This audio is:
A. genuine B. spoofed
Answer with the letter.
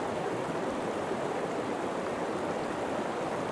A